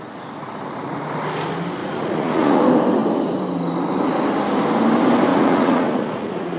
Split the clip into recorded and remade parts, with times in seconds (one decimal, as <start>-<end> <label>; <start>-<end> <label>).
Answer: 0.0-1.8 recorded; 1.8-2.6 remade; 2.6-5.3 recorded; 5.3-6.6 remade